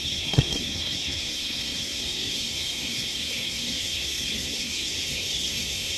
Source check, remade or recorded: remade